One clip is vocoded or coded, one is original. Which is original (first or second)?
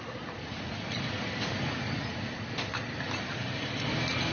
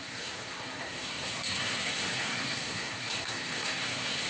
first